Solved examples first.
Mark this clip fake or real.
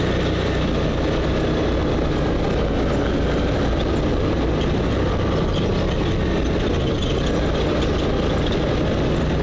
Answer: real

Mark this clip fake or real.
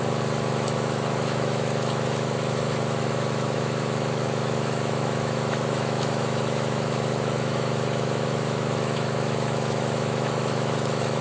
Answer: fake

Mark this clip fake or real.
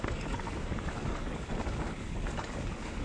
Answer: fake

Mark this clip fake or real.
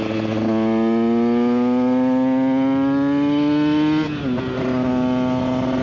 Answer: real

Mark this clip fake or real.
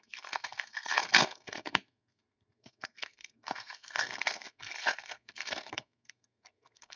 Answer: fake